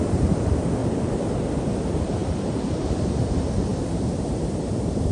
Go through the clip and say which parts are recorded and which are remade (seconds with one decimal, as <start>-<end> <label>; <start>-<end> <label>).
0.0-0.8 remade; 0.8-1.6 recorded; 1.6-5.1 remade